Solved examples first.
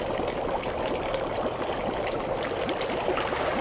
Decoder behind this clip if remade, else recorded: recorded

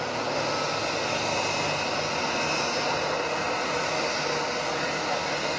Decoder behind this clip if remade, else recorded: recorded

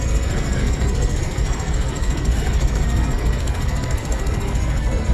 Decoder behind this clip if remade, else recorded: remade, codec, SNAC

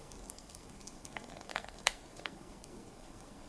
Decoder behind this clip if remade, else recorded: remade, codec, SNAC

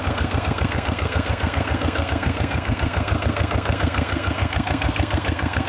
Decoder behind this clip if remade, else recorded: remade, codec, SNAC